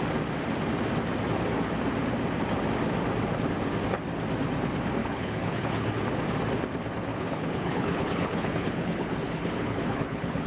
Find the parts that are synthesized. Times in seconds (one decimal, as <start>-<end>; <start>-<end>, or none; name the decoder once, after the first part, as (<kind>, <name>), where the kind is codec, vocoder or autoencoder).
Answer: 5.0-5.9 (codec, HILCodec); 7.1-10.5